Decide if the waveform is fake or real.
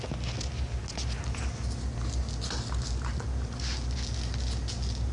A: real